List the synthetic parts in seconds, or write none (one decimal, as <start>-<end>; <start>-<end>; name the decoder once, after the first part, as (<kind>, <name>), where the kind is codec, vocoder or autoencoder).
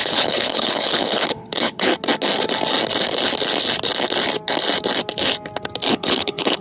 0.0-1.9 (codec, HILCodec); 5.9-6.6